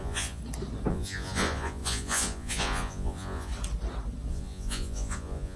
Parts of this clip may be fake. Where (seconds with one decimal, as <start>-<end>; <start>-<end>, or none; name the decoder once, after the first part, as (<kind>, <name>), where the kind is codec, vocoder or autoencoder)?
0.0-0.4 (vocoder, Vocos); 0.9-3.5; 4.3-5.6